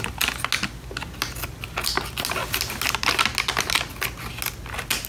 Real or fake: real